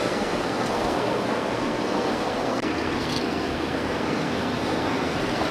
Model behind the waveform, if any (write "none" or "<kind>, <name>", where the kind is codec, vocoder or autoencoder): codec, SNAC